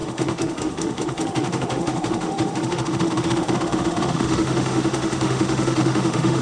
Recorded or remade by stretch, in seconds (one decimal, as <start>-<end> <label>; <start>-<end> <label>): 0.0-6.4 remade